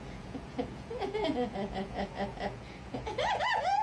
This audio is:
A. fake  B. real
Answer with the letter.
A